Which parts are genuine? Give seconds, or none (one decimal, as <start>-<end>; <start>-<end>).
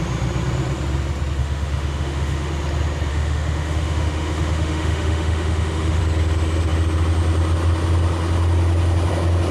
0.0-1.4; 2.5-3.1; 6.0-9.5